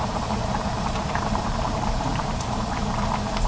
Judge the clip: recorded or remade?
remade